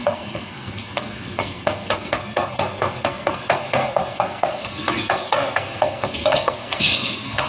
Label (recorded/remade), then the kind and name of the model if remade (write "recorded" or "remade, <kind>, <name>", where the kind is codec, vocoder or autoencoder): remade, codec, SNAC